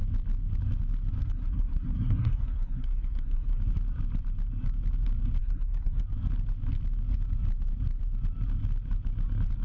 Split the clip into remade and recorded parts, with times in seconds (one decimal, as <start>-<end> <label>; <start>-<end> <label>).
0.0-1.2 recorded; 1.2-3.6 remade; 3.6-5.4 recorded; 5.4-6.0 remade; 6.0-9.6 recorded

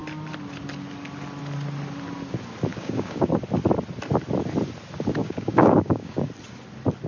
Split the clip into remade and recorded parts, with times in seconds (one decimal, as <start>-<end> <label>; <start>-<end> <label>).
0.0-2.7 recorded; 2.7-3.3 remade; 3.3-5.2 recorded; 5.2-6.3 remade; 6.3-7.1 recorded

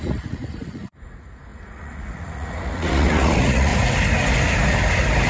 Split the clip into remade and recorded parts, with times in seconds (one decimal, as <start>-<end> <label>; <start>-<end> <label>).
0.0-3.7 remade; 3.7-5.3 recorded

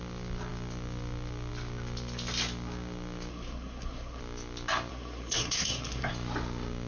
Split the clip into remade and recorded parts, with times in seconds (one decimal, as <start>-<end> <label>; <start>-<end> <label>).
0.0-3.3 recorded; 3.3-4.2 remade; 4.2-4.9 recorded; 4.9-6.1 remade; 6.1-6.9 recorded

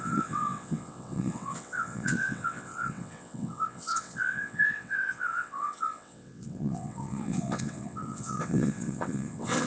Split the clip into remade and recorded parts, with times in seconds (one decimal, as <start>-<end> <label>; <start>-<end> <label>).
0.0-9.7 remade

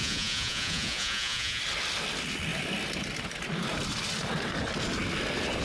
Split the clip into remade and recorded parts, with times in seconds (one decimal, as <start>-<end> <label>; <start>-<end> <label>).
0.0-1.6 remade; 1.6-5.6 recorded

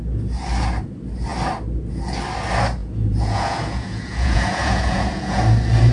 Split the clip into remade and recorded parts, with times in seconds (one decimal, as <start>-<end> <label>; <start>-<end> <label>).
0.0-2.8 recorded; 2.8-5.4 remade; 5.4-5.9 recorded